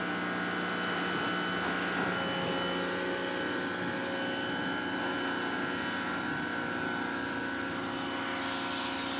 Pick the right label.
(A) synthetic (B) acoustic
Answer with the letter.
B